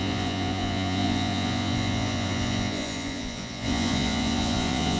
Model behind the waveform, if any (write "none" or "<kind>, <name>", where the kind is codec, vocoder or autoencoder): vocoder, Vocos